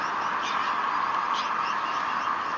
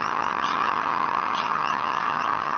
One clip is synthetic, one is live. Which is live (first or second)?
first